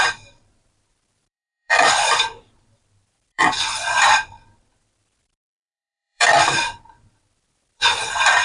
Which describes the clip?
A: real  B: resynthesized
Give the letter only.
B